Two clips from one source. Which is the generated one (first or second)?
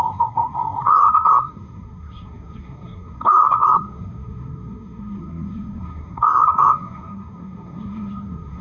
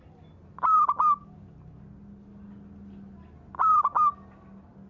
first